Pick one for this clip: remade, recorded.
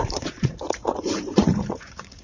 remade